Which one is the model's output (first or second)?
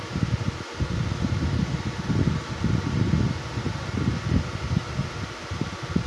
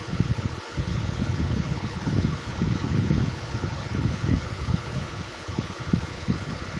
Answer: second